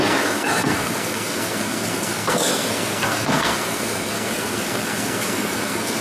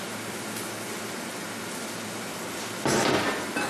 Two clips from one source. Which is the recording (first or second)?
second